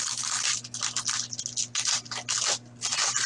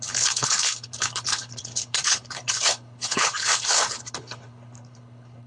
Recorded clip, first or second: first